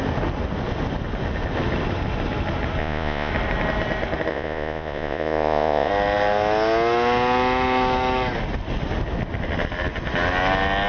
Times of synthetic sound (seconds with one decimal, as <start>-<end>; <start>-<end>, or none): 2.8-3.3; 4.3-5.9